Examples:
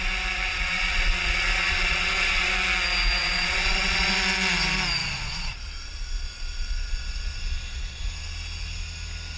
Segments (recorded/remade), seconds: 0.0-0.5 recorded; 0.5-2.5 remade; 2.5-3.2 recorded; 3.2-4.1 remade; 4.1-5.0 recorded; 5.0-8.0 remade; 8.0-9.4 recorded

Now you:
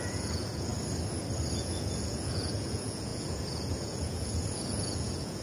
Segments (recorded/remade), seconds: 0.0-0.7 remade; 0.7-1.5 recorded; 1.5-5.4 remade

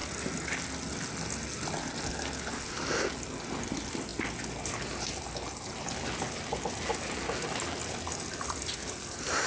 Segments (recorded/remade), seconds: 0.0-9.5 recorded

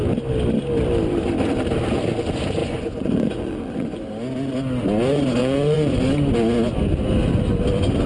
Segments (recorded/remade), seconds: 0.0-2.6 recorded; 2.6-4.1 remade; 4.1-5.4 recorded; 5.4-6.0 remade; 6.0-8.1 recorded

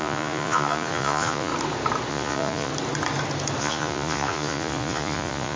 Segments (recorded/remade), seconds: 0.0-1.5 remade; 1.5-2.1 recorded; 2.1-2.7 remade; 2.7-3.6 recorded; 3.6-5.6 remade

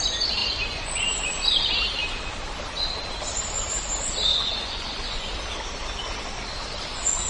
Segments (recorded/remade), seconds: 0.0-0.4 recorded; 0.4-1.6 remade; 1.6-4.3 recorded; 4.3-5.3 remade; 5.3-7.3 recorded

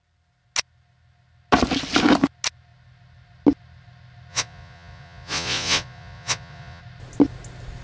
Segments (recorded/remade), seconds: 0.0-4.3 recorded; 4.3-6.8 remade; 6.8-7.8 recorded

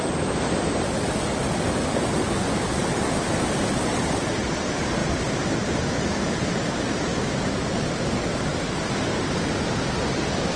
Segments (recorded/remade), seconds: 0.0-10.6 recorded